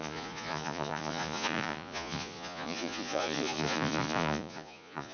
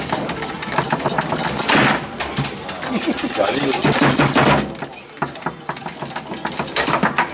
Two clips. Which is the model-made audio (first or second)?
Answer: first